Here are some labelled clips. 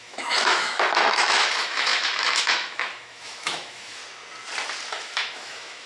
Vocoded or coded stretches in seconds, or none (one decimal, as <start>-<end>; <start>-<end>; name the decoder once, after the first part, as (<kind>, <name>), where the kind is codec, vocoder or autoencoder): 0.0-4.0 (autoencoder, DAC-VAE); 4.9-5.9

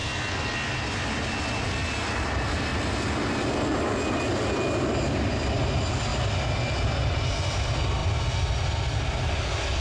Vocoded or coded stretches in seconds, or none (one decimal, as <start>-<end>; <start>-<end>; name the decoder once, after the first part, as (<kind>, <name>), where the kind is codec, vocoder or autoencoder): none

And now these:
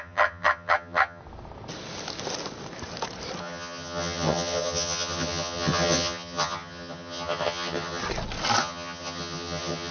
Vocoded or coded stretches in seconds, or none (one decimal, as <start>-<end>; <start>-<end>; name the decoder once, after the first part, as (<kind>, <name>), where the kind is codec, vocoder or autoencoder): 0.0-1.2 (vocoder, HiFi-GAN); 3.4-8.0; 8.6-9.9

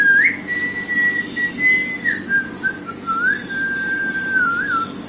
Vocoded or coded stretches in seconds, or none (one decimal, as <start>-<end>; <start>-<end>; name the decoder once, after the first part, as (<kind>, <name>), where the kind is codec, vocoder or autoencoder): 3.4-4.5 (vocoder, BigVGAN v2)